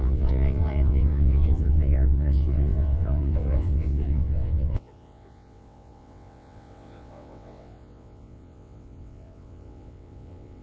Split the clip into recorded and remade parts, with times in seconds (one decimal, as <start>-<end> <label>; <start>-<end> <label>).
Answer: 0.0-10.6 remade